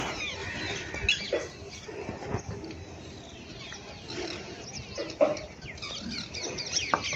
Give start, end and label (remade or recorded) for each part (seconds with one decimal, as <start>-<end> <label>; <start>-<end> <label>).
0.0-7.2 recorded